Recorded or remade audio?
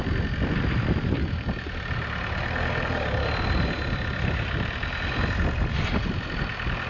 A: recorded